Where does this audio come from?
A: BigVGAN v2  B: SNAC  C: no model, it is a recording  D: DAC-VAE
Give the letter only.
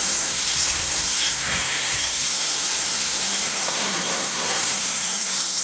B